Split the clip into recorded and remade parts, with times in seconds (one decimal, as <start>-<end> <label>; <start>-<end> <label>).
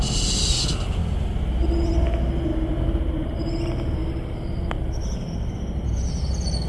0.0-6.7 recorded